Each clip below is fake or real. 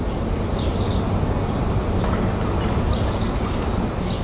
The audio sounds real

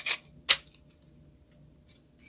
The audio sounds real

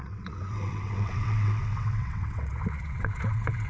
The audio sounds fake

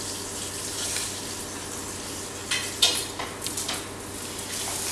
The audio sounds real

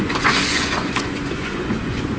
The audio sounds fake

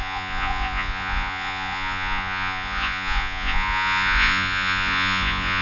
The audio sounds fake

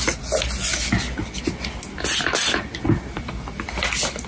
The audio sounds real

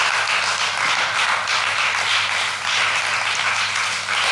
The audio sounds real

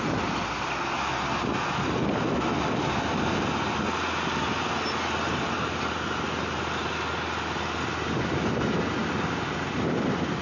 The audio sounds real